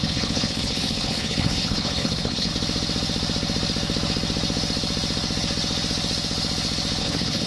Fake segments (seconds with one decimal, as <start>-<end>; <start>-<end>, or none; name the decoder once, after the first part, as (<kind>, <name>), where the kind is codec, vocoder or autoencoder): 0.0-2.5 (codec, HILCodec); 7.0-7.5